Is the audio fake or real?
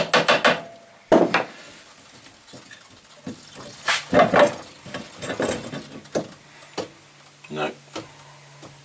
real